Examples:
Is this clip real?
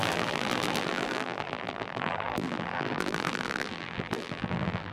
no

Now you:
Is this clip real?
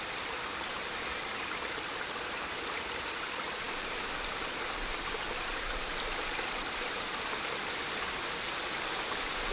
no